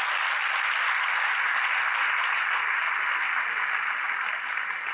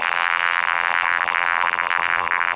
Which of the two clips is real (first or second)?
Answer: first